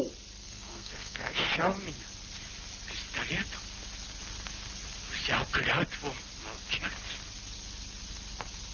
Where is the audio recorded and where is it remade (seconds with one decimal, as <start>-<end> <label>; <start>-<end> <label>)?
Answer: 0.0-0.4 recorded; 0.4-1.5 remade; 1.5-8.7 recorded